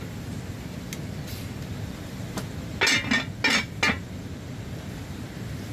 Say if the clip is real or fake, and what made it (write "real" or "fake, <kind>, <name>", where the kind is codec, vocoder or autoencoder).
real